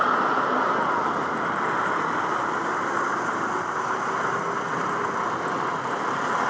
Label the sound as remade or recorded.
recorded